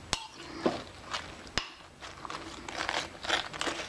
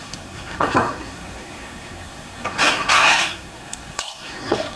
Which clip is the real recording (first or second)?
first